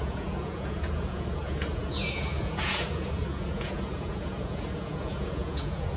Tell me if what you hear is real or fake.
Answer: fake